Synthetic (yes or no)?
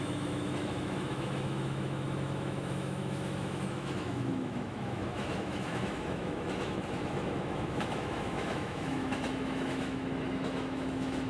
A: yes